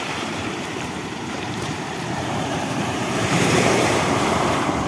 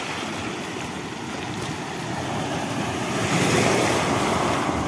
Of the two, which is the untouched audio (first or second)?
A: second